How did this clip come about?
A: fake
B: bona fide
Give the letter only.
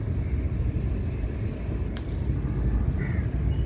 B